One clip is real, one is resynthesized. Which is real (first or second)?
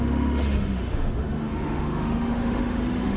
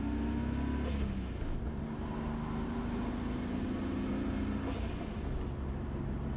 second